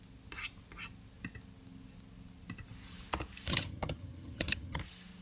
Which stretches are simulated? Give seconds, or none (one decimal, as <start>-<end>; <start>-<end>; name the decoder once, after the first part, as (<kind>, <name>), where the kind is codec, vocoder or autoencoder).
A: 3.5-4.8 (vocoder, HiFi-GAN)